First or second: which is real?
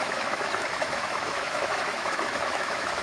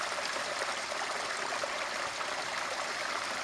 second